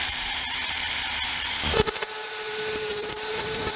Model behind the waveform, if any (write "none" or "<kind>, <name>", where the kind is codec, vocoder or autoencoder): vocoder, BigVGAN v2